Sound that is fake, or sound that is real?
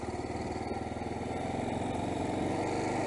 real